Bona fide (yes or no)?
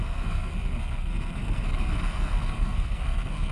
no